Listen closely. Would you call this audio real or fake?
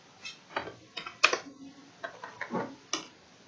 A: real